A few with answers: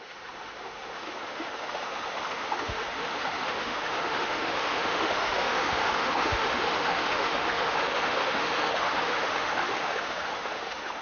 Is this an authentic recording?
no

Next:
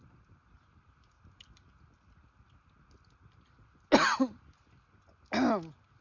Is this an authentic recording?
yes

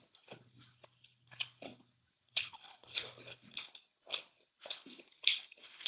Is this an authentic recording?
no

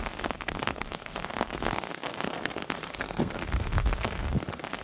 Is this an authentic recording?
no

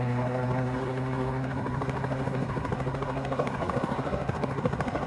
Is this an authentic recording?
no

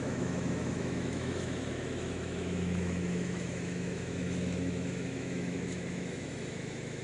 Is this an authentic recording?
no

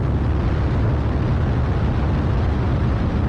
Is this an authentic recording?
yes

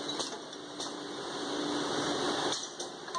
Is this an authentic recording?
yes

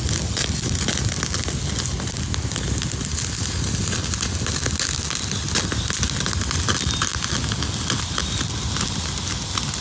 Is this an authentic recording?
yes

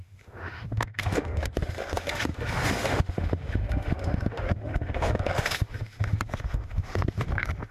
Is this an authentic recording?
no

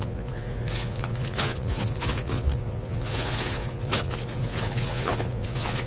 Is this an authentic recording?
no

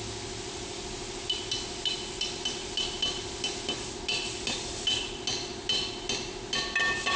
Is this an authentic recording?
yes